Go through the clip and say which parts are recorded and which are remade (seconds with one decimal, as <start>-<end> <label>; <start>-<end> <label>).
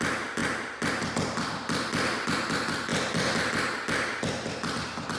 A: 0.0-5.2 recorded